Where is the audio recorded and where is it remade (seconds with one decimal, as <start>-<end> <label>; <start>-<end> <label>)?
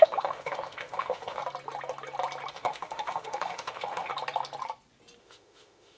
0.0-1.4 remade; 1.4-2.5 recorded; 2.5-4.1 remade; 4.1-5.2 recorded; 5.2-6.0 remade